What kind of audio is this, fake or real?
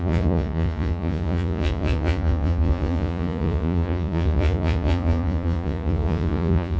fake